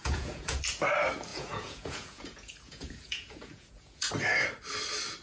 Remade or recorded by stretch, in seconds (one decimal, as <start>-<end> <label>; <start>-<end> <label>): 0.0-0.6 remade; 0.6-1.3 recorded; 1.3-4.1 remade; 4.1-5.2 recorded